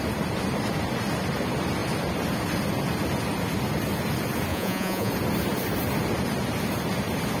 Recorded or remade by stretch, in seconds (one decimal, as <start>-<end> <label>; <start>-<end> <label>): 0.0-4.5 recorded; 4.5-5.1 remade; 5.1-7.4 recorded